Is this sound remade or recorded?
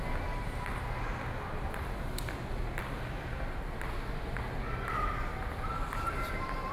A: recorded